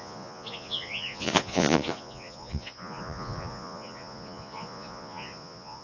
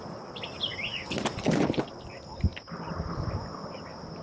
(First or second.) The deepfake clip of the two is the first